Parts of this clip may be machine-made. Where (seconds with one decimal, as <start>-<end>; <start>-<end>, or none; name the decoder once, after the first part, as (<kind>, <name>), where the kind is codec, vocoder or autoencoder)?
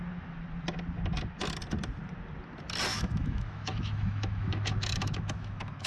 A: 2.9-5.9 (autoencoder, DAC-VAE)